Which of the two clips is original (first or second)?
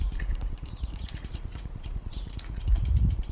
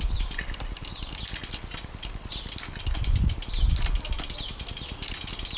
second